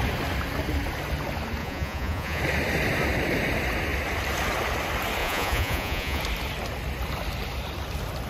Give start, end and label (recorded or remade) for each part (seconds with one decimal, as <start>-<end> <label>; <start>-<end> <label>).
0.0-1.6 recorded; 1.6-2.4 remade; 2.4-5.2 recorded; 5.2-6.2 remade; 6.2-8.3 recorded